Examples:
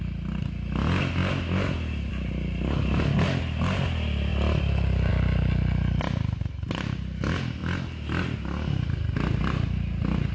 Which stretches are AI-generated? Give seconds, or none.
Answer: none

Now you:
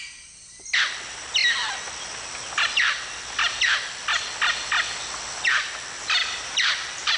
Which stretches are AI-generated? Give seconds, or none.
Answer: 6.2-7.2 (vocoder, BigVGAN v2)

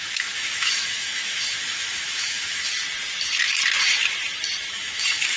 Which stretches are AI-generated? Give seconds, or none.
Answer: 0.0-2.7 (autoencoder, DAC-VAE); 4.7-5.4

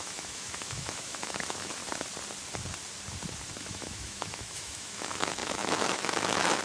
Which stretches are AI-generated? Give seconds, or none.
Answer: 0.0-1.8 (autoencoder, DAC-VAE); 3.6-6.6

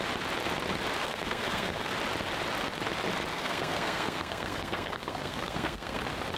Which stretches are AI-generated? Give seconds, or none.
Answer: 1.0-1.9 (codec, SNAC); 3.3-6.0

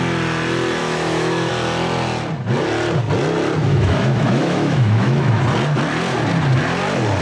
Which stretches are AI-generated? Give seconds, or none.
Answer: 0.8-1.5 (autoencoder, DAC-VAE); 3.6-5.4